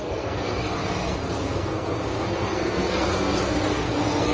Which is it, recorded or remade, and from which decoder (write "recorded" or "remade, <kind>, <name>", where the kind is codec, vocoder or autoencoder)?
remade, codec, SNAC